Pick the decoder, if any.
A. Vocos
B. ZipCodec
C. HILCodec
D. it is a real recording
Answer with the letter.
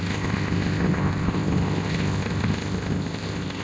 B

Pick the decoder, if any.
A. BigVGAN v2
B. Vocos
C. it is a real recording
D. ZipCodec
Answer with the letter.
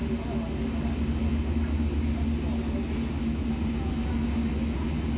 C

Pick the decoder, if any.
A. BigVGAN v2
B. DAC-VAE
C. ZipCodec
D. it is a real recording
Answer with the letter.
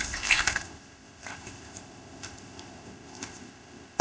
C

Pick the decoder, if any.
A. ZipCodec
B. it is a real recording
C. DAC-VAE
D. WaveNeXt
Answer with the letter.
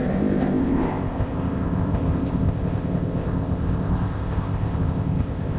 A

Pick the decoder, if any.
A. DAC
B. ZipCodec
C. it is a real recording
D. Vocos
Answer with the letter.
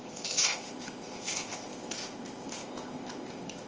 B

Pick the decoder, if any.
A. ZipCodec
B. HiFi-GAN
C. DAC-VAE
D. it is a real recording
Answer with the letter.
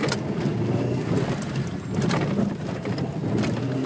D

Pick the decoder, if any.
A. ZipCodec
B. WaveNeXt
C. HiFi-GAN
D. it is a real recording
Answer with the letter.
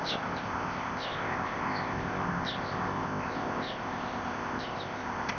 A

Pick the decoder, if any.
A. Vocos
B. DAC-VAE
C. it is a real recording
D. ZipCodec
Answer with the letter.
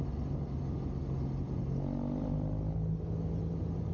C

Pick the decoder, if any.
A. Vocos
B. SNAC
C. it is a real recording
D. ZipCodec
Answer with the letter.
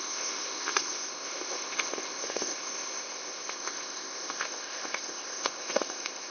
D